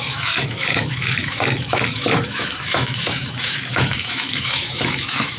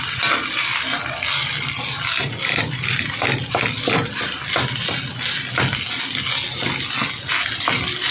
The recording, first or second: second